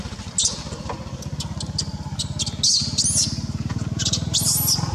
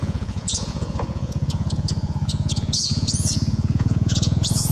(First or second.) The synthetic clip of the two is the second